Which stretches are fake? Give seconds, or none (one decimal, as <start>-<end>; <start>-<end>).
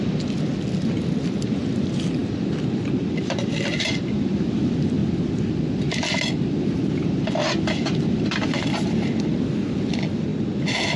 0.0-5.0; 6.3-10.3